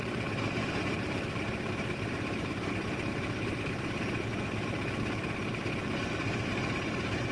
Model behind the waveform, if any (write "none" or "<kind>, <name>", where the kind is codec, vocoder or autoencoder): vocoder, BigVGAN v2